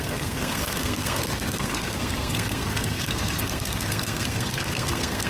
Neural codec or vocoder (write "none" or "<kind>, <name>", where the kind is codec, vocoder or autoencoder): codec, SNAC